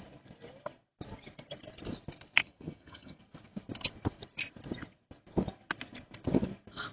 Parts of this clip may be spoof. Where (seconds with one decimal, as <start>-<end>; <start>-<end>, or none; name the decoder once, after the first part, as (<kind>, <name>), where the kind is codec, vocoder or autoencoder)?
2.4-3.2 (vocoder, HiFi-GAN)